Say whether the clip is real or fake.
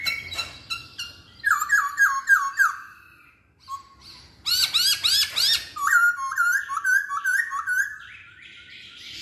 real